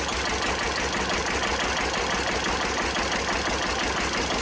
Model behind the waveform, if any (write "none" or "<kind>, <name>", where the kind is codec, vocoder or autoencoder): none